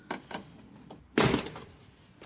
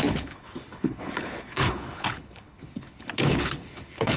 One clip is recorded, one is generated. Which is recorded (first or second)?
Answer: first